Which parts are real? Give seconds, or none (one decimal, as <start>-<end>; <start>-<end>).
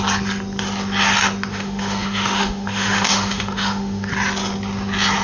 0.0-1.5; 4.1-5.2